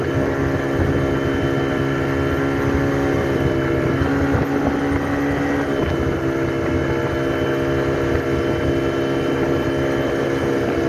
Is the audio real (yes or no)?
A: yes